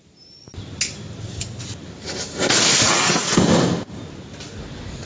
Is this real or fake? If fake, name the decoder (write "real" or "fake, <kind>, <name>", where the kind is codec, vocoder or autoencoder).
real